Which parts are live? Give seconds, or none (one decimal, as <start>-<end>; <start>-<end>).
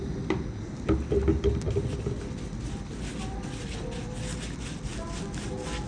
0.0-5.9